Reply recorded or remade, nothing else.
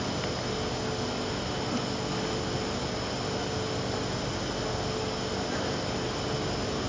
recorded